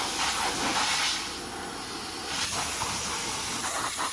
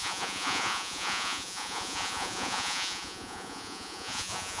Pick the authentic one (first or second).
first